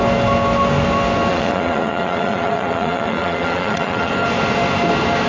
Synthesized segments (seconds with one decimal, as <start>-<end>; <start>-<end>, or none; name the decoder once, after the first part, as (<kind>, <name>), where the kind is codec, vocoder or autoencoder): 1.3-4.1 (vocoder, Vocos)